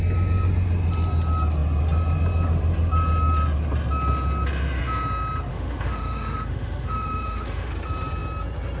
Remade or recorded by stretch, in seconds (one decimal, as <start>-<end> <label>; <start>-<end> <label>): 0.0-5.5 recorded; 5.5-7.7 remade; 7.7-8.8 recorded